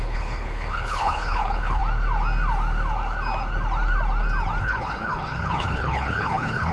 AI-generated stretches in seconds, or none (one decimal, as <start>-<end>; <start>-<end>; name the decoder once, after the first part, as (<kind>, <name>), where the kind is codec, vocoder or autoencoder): 0.0-1.8 (codec, HILCodec); 4.6-6.7